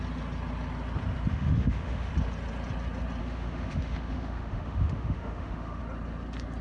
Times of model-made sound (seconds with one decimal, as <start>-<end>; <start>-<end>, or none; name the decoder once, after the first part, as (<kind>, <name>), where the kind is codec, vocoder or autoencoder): 1.3-2.1 (autoencoder, DAC-VAE); 3.2-5.8